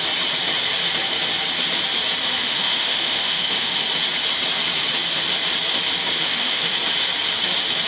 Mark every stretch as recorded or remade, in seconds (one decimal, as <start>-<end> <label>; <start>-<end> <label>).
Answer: 0.0-2.4 recorded; 2.4-3.8 remade; 3.8-6.2 recorded; 6.2-6.7 remade; 6.7-7.9 recorded